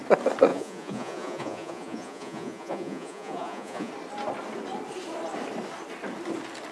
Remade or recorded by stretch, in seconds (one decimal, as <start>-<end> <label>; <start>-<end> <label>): 0.0-0.5 recorded; 0.5-3.9 remade; 3.9-6.7 recorded